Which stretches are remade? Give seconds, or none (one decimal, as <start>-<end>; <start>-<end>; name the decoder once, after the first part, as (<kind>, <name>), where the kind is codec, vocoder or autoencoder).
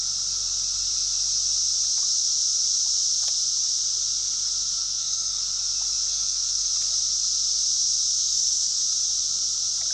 4.8-5.4 (codec, SNAC); 6.1-6.7; 8.2-8.8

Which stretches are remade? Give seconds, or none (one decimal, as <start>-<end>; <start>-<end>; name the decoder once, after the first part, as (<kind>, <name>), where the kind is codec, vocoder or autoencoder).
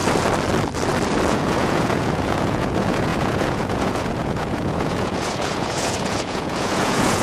1.3-7.2 (vocoder, Vocos)